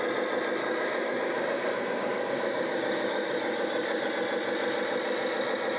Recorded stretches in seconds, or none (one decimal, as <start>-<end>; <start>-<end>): 0.0-0.6; 4.1-5.8